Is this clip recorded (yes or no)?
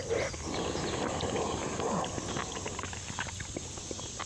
yes